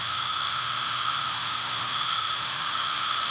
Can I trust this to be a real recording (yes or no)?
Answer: no